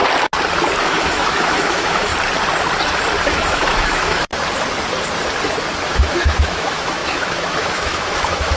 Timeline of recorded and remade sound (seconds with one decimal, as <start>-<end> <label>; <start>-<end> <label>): 0.0-0.8 recorded; 0.8-2.1 remade; 2.1-3.2 recorded; 3.2-4.3 remade; 4.3-5.9 recorded; 5.9-8.6 remade